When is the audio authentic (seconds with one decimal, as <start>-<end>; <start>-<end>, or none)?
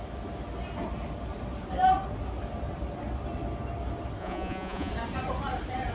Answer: 0.0-4.2; 4.9-5.9